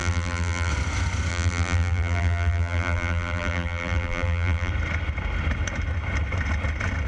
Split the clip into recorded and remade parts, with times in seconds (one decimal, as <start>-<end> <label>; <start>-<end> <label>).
0.0-0.7 remade; 0.7-1.3 recorded; 1.3-4.7 remade; 4.7-7.1 recorded

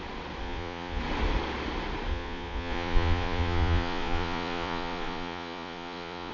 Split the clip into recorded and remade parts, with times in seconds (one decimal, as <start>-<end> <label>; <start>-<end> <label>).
0.0-0.4 recorded; 0.4-1.0 remade; 1.0-2.1 recorded; 2.1-6.3 remade

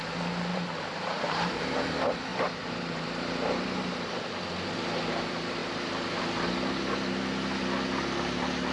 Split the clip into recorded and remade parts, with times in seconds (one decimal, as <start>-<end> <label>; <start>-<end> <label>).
0.0-0.5 recorded; 0.5-1.6 remade; 1.6-2.3 recorded; 2.3-4.3 remade; 4.3-5.6 recorded; 5.6-6.2 remade; 6.2-8.7 recorded

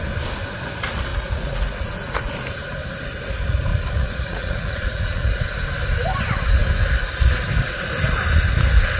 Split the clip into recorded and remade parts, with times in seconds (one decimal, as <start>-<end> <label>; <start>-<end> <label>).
0.0-1.1 recorded; 1.1-2.3 remade; 2.3-3.7 recorded; 3.7-5.4 remade; 5.4-9.0 recorded

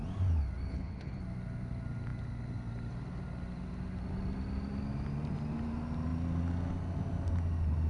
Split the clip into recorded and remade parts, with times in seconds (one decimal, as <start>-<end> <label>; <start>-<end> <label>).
0.0-0.7 recorded; 0.7-1.2 remade; 1.2-7.9 recorded

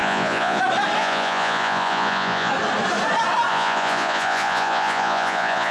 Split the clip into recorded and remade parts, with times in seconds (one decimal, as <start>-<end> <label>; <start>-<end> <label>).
0.0-0.6 remade; 0.6-1.0 recorded; 1.0-2.5 remade; 2.5-3.5 recorded; 3.5-5.7 remade

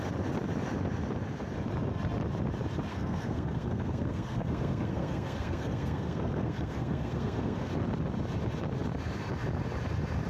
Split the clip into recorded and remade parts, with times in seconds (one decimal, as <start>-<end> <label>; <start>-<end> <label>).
0.0-2.9 recorded; 2.9-7.7 remade; 7.7-10.3 recorded

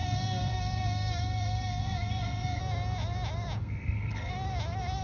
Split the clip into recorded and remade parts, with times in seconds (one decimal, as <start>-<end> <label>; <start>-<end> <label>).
0.0-2.6 remade; 2.6-3.6 recorded; 3.6-4.3 remade; 4.3-5.0 recorded